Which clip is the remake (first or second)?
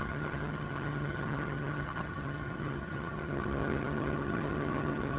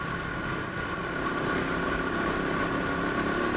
first